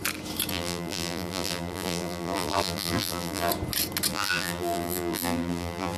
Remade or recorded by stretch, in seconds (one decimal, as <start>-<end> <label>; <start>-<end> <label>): 0.0-0.5 recorded; 0.5-3.5 remade; 3.5-4.1 recorded; 4.1-6.0 remade

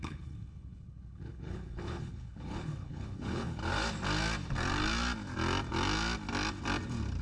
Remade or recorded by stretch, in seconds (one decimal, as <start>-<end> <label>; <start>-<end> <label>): 0.0-3.6 remade; 3.6-7.2 recorded

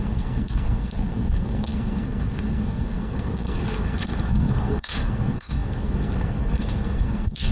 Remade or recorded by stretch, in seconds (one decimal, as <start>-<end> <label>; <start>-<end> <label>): 0.0-7.5 remade

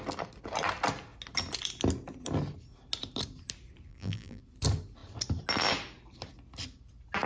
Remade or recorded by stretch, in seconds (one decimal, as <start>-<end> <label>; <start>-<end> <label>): 0.0-3.9 recorded; 3.9-4.4 remade; 4.4-7.3 recorded

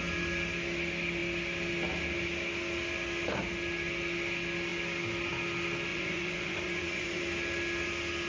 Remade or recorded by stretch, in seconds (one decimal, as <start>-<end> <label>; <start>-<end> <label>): 0.0-5.9 recorded; 5.9-7.2 remade; 7.2-8.3 recorded

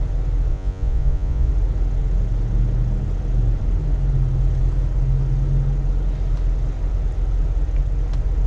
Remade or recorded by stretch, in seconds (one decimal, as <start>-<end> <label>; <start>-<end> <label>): 0.0-0.5 recorded; 0.5-1.5 remade; 1.5-8.5 recorded